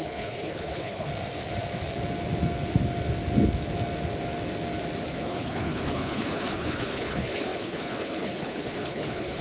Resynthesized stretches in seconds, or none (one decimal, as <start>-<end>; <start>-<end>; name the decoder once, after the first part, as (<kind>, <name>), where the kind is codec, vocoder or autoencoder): 0.0-1.1 (codec, HILCodec); 5.1-9.4